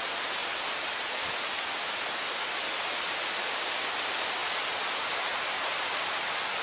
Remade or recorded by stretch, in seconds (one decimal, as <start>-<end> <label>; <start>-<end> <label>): 0.0-6.6 recorded